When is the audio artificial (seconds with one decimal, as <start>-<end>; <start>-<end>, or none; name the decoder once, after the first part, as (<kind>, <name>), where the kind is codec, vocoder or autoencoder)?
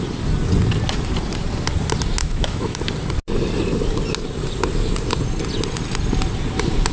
2.2-2.8 (autoencoder, DAC-VAE)